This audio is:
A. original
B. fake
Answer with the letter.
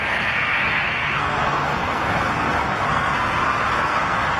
B